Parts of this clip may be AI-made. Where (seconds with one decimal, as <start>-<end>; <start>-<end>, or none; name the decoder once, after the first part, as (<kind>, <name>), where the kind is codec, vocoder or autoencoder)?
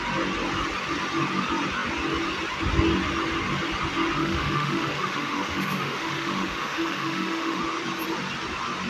4.2-7.6 (autoencoder, DAC-VAE)